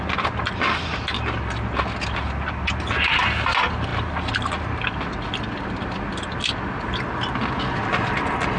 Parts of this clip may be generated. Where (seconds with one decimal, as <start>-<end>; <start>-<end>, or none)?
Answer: none